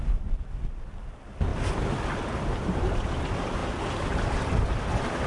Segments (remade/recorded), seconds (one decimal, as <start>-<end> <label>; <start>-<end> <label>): 0.0-5.3 recorded

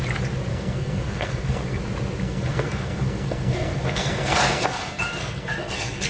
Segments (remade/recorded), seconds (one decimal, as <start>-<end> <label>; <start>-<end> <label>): 0.0-0.5 recorded; 0.5-1.8 remade; 1.8-2.2 recorded; 2.2-6.1 remade

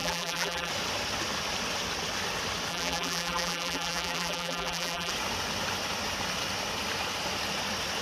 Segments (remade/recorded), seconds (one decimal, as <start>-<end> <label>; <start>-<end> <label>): 0.0-0.7 remade; 0.7-2.7 recorded; 2.7-5.1 remade; 5.1-8.0 recorded